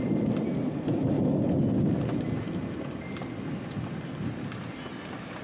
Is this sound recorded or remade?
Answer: recorded